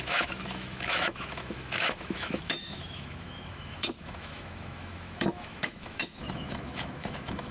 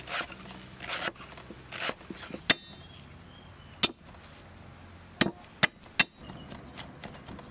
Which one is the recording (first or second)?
second